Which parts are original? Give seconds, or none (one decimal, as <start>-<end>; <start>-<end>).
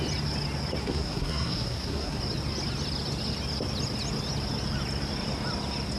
0.0-0.8; 2.2-6.0